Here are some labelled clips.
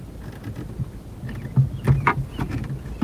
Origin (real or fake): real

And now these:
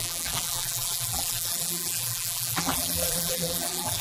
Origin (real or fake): fake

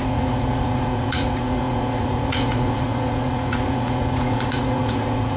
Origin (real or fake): fake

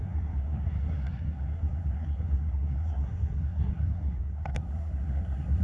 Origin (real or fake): fake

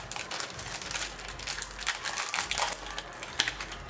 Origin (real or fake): real